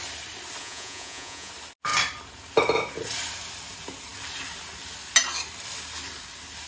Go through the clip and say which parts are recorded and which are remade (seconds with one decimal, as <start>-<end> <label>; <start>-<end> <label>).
0.0-0.6 recorded; 0.6-1.5 remade; 1.5-6.7 recorded